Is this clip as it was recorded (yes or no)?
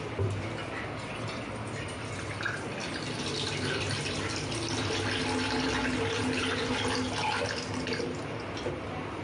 yes